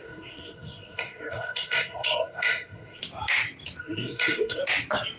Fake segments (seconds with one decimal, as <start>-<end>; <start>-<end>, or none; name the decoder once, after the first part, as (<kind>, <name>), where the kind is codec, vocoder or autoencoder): 0.0-3.0 (codec, SNAC); 3.8-4.6